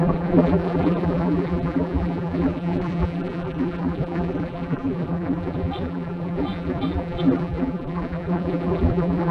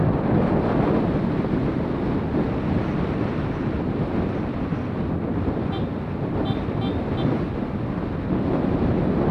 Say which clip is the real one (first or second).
second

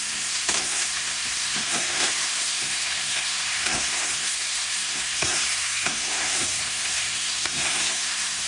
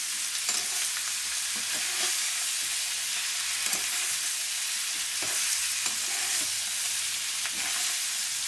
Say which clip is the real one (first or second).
second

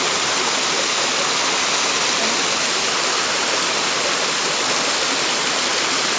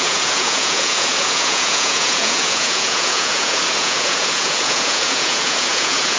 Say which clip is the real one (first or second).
first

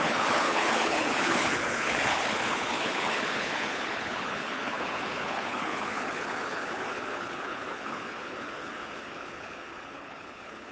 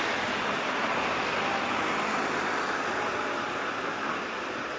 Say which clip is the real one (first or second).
second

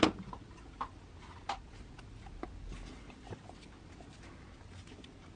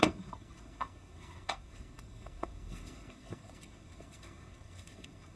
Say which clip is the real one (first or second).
first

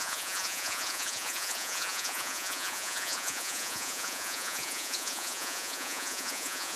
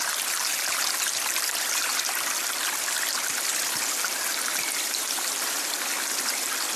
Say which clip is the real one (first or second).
second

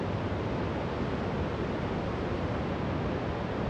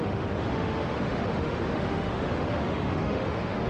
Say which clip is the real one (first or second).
first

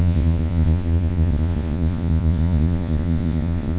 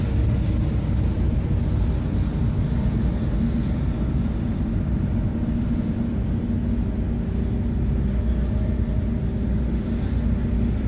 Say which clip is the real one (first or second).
second